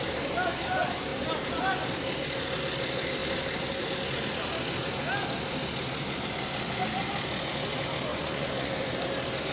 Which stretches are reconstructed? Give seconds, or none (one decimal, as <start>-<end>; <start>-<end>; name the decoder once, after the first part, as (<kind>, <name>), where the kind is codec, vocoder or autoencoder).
8.1-8.9 (vocoder, Vocos)